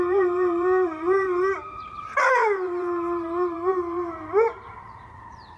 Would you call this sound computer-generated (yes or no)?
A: yes